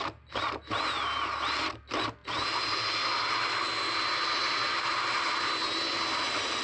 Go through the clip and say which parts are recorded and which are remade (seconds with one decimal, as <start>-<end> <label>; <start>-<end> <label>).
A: 0.0-6.6 recorded